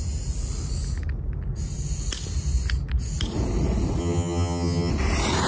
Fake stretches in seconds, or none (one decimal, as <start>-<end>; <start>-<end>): 4.0-4.9